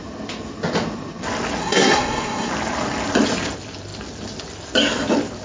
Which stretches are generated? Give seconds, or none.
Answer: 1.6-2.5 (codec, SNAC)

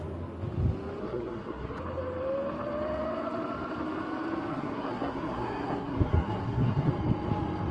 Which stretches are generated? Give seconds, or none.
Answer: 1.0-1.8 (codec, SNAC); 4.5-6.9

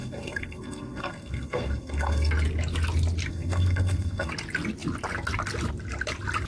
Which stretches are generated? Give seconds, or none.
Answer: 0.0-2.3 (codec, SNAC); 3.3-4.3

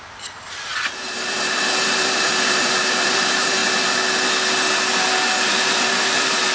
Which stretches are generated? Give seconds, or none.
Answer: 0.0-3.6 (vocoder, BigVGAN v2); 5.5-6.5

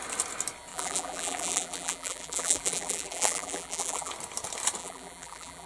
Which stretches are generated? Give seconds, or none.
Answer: 0.7-4.1 (vocoder, BigVGAN v2); 4.8-5.7

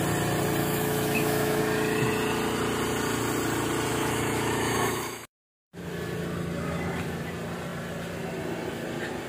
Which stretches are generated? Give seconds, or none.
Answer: 0.6-1.6 (autoencoder, DAC-VAE); 3.9-5.8

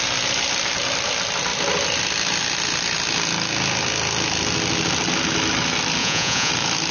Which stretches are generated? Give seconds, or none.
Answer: 6.0-6.5 (vocoder, Vocos)

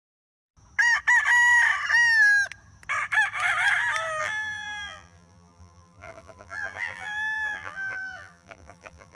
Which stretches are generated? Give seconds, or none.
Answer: 0.0-0.5 (vocoder, BigVGAN v2); 4.2-9.2